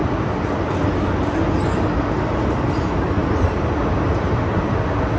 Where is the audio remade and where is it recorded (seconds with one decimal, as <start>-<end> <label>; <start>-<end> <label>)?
0.0-5.2 recorded